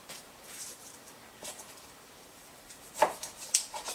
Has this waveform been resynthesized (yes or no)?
yes